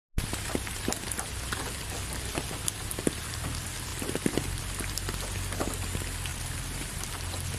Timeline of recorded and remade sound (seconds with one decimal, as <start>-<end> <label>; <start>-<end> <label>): 0.0-6.3 recorded; 6.3-7.1 remade; 7.1-7.6 recorded